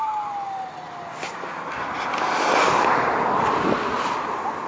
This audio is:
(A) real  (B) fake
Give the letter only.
A